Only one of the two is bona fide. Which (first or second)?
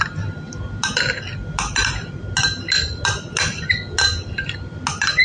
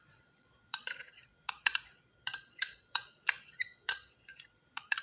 first